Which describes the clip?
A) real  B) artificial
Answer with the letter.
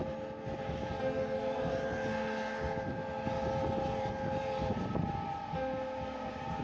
A